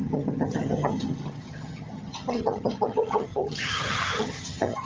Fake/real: fake